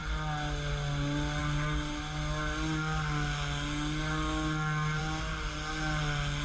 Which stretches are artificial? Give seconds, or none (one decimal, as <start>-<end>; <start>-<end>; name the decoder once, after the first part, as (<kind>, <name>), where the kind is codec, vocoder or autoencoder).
none